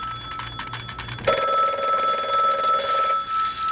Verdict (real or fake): real